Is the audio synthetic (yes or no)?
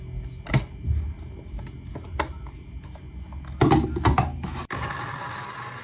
no